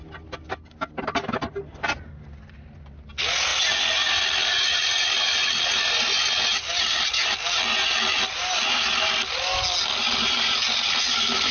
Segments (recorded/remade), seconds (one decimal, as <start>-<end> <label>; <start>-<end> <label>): 0.0-11.5 recorded